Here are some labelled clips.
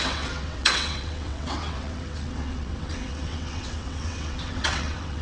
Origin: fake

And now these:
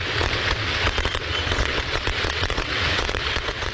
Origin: fake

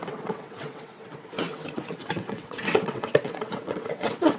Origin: fake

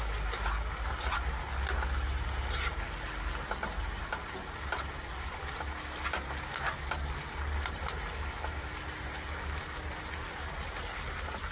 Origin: real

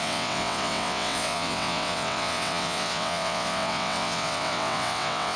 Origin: fake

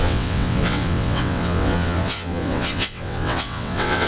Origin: fake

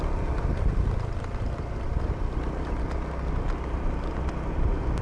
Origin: real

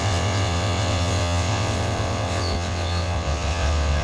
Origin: fake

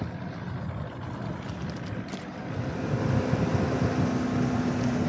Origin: real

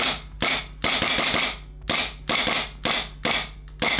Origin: real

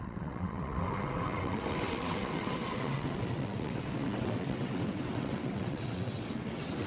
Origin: fake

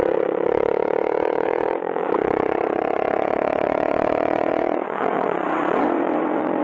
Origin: fake